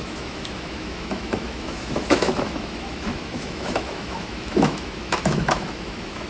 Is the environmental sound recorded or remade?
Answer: remade